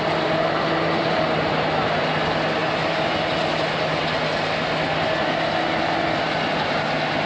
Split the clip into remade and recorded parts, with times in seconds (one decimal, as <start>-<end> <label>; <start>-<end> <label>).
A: 0.0-7.3 recorded